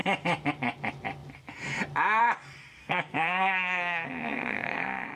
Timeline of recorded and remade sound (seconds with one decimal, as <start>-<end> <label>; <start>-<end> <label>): 0.0-2.8 recorded; 2.8-5.2 remade